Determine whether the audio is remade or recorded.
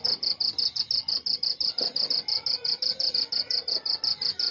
recorded